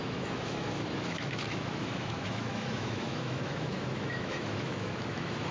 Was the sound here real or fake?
fake